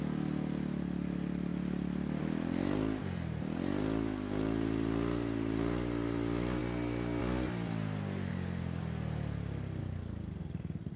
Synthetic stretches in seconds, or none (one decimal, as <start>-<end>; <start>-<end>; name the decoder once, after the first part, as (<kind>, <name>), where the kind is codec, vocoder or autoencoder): 8.3-8.8 (codec, DAC); 9.8-10.4